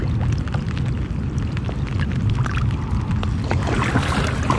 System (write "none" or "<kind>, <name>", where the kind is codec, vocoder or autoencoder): none